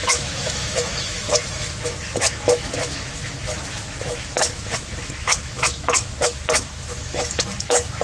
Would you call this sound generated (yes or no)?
yes